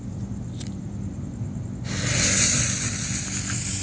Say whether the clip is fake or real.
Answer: real